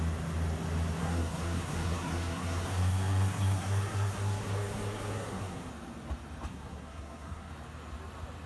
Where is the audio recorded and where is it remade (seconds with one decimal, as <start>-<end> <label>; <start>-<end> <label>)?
0.0-1.0 recorded; 1.0-5.7 remade; 5.7-6.5 recorded; 6.5-7.5 remade; 7.5-8.5 recorded